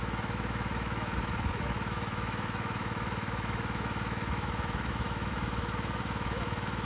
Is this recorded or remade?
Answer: remade